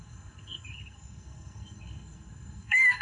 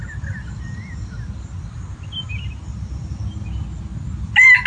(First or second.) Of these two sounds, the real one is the second